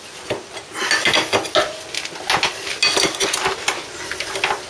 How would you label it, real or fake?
real